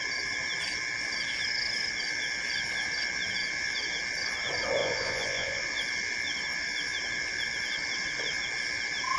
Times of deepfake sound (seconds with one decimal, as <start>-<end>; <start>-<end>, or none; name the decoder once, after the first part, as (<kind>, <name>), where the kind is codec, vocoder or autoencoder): 4.8-5.6 (vocoder, Vocos)